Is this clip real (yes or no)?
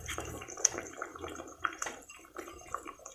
no